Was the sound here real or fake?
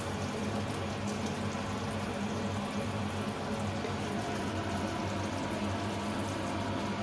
real